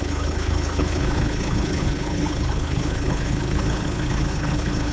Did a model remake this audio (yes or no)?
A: yes